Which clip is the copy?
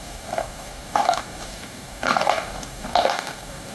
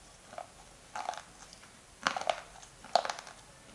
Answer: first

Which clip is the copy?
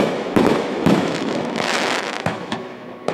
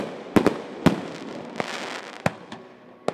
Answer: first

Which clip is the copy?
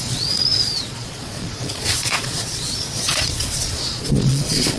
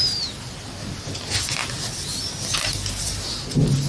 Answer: first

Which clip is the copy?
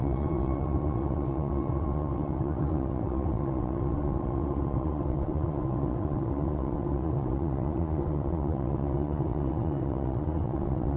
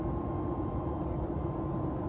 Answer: first